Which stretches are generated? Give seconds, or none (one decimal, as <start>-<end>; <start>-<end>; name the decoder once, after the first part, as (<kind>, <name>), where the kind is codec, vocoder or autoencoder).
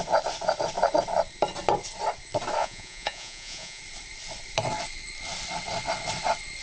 2.6-3.8 (vocoder, Vocos)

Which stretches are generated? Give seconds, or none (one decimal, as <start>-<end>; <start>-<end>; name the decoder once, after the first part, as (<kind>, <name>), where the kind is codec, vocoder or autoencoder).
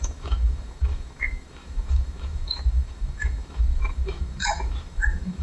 0.0-5.4 (autoencoder, DAC-VAE)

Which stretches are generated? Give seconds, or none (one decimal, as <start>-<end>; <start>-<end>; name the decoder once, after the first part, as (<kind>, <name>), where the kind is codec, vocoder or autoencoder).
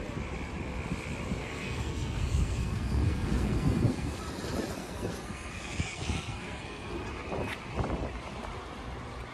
1.4-4.2 (codec, SNAC); 4.8-6.9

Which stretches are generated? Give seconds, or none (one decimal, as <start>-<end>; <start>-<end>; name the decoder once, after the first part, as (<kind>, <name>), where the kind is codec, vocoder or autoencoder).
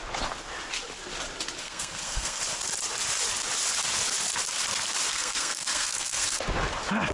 1.6-2.4 (codec, SNAC); 5.1-6.4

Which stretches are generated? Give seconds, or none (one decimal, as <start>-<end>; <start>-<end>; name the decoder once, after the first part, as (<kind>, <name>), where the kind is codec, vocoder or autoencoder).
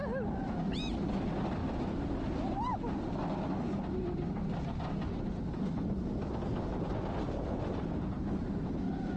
1.6-2.2 (vocoder, BigVGAN v2)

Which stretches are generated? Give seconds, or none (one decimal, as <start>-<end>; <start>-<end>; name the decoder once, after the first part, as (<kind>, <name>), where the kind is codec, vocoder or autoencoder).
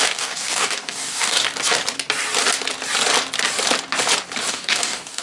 0.0-1.4 (codec, DAC); 4.5-5.2